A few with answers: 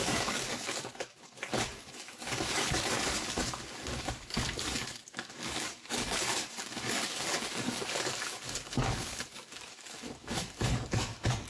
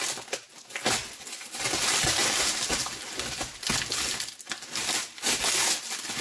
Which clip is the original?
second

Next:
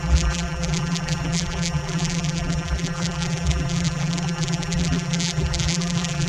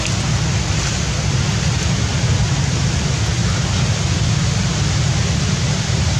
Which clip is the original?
second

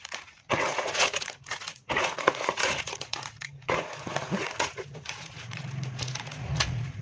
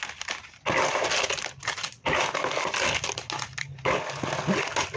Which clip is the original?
second